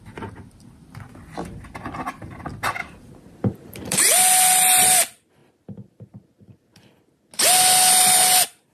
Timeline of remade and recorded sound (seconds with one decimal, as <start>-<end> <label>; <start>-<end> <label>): 0.0-2.8 recorded; 2.8-4.0 remade; 4.0-8.7 recorded